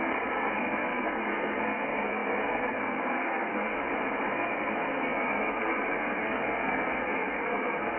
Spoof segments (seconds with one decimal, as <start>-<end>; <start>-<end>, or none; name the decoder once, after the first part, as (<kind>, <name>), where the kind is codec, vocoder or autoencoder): 0.0-3.8 (codec, SNAC); 4.3-8.0

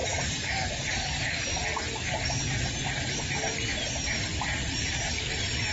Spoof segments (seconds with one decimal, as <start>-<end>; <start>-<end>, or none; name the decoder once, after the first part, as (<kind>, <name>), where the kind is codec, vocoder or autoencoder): 0.0-1.2 (vocoder, BigVGAN v2); 4.3-5.1

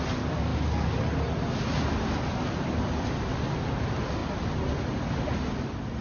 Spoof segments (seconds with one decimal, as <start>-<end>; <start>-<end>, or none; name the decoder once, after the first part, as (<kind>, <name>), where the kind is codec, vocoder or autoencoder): none

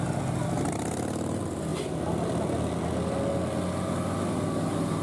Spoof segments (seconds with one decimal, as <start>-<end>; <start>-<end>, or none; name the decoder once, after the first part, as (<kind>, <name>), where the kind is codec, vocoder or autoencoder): none